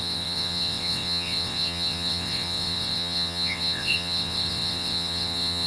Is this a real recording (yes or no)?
no